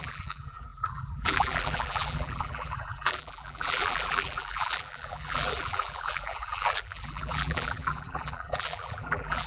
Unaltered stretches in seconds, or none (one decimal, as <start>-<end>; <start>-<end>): none